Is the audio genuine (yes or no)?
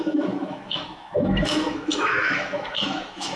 no